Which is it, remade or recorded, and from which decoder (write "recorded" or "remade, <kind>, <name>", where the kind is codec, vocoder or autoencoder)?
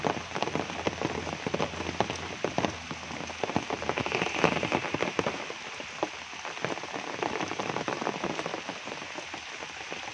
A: recorded